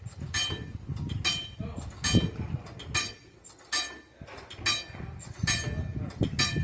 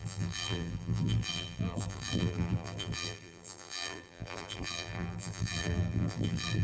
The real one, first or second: first